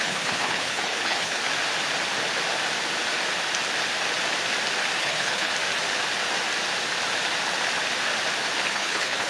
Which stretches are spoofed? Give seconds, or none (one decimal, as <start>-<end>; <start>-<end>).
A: 0.0-1.4; 5.0-5.5; 8.7-9.3